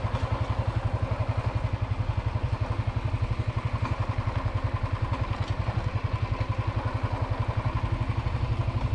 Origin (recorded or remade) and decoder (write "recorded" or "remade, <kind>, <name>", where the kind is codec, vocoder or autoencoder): recorded